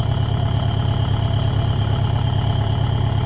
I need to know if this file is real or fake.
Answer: real